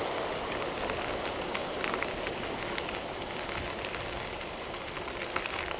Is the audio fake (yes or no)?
no